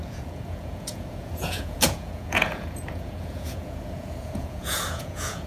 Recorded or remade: remade